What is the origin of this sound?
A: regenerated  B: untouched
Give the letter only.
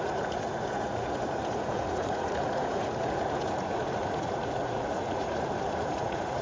A